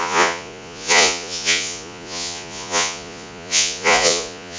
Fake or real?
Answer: fake